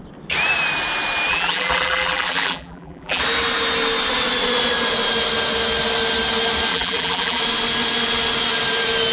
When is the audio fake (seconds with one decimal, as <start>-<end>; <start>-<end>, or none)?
1.3-3.2; 6.7-7.4